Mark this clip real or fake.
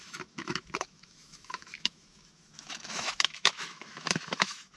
fake